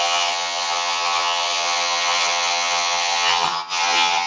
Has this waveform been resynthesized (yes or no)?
yes